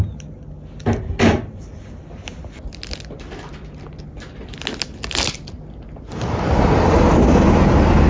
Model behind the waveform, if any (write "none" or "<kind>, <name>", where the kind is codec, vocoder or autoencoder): none